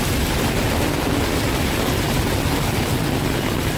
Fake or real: real